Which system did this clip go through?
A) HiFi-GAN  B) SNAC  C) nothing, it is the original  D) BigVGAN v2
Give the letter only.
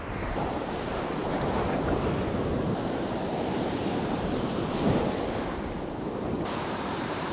D